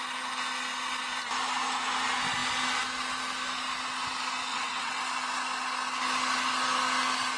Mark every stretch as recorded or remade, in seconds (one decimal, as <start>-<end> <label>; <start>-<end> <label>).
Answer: 0.0-4.5 recorded; 4.5-5.0 remade; 5.0-7.4 recorded